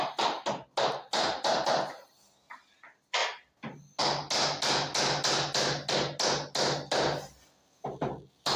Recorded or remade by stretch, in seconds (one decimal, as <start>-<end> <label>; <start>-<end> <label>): 0.0-8.6 recorded